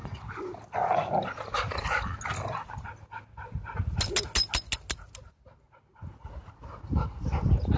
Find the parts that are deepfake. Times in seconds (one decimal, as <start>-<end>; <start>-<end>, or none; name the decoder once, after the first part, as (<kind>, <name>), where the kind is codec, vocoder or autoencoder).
none